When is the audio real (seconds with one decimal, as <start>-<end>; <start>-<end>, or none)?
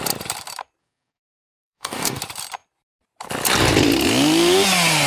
0.0-0.8; 2.2-5.1